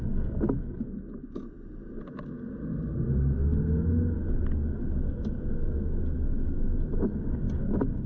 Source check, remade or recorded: recorded